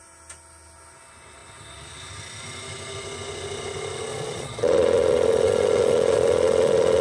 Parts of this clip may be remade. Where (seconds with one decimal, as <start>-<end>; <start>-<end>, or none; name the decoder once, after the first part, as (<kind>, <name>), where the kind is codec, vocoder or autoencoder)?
4.1-7.0 (vocoder, Vocos)